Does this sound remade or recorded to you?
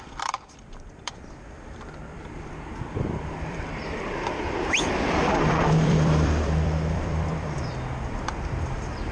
remade